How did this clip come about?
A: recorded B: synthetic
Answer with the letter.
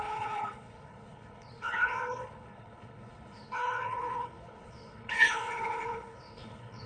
B